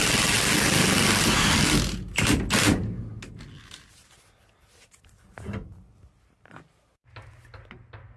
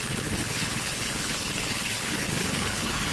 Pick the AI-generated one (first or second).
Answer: second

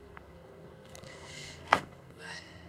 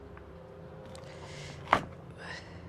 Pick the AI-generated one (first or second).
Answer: first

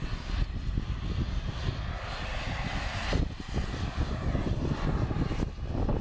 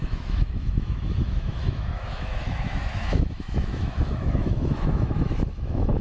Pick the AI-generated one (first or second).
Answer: second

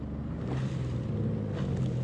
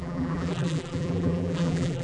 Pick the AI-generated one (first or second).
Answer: second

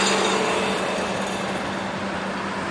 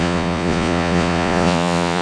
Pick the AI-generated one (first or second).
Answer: second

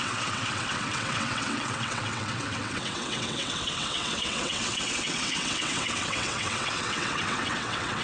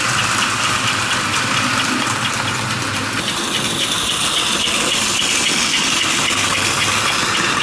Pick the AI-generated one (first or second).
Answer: first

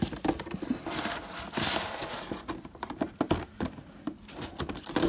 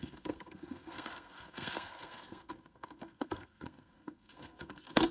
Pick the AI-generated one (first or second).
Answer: second